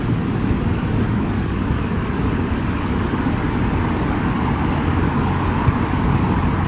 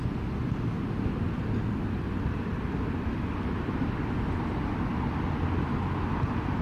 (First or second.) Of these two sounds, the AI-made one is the first